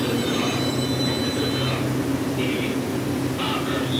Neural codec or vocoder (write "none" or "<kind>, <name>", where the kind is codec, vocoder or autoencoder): none